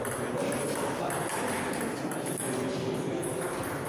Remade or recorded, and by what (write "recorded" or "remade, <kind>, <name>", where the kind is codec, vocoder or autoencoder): recorded